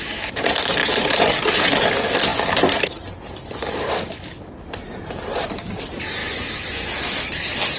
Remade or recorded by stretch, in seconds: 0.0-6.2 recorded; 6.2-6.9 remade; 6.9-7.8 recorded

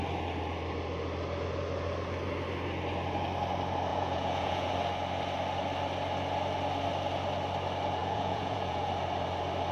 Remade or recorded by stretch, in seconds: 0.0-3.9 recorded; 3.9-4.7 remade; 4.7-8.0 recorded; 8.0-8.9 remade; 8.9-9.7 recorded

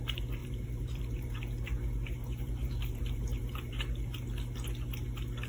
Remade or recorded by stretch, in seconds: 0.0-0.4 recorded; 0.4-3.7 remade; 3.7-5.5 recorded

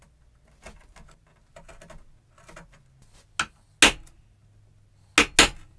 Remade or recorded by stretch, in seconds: 0.0-5.8 recorded